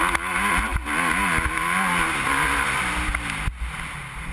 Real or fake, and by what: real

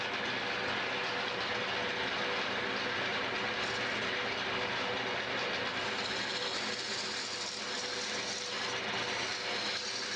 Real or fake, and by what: real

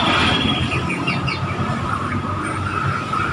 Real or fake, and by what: real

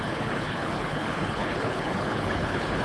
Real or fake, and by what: fake, codec, HILCodec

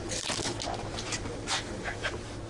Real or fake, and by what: real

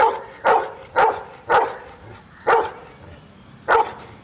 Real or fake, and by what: real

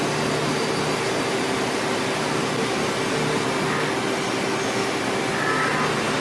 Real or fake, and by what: real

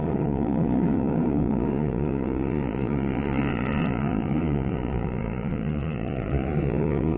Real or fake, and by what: fake, vocoder, Vocos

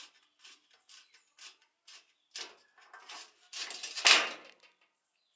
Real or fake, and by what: real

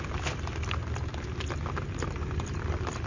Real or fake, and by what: fake, vocoder, BigVGAN v2